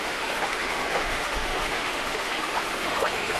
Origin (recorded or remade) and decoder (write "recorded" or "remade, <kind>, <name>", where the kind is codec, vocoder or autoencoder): remade, autoencoder, DAC-VAE